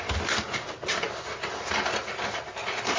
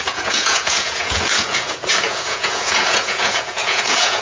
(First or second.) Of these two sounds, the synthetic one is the second